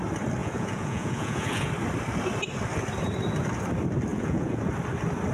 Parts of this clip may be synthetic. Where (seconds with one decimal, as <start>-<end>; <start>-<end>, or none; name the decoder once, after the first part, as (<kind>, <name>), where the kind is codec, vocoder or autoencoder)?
0.4-1.7 (vocoder, Vocos); 4.1-4.6